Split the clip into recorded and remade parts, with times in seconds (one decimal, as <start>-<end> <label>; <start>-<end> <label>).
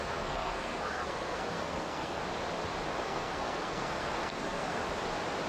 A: 0.0-2.2 remade; 2.2-3.0 recorded; 3.0-4.8 remade; 4.8-5.5 recorded